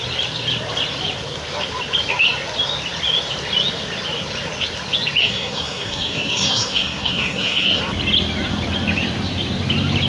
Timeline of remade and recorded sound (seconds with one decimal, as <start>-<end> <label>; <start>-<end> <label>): 0.0-5.2 recorded; 5.2-7.8 remade; 7.8-10.1 recorded